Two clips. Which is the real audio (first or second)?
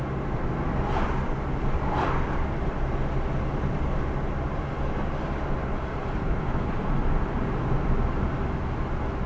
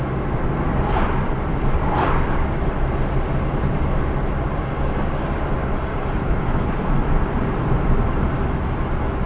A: first